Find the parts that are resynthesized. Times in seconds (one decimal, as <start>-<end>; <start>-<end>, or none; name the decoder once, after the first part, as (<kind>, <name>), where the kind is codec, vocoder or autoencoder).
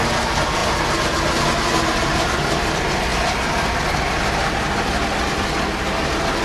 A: none